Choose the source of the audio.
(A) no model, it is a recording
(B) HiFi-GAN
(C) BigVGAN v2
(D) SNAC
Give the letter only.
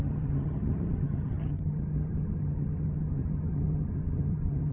B